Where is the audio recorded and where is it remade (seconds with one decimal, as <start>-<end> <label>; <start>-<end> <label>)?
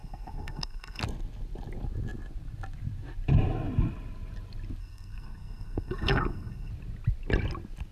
0.0-1.0 remade; 1.0-4.8 recorded; 4.8-6.7 remade; 6.7-7.9 recorded